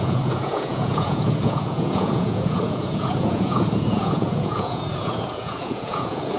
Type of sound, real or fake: fake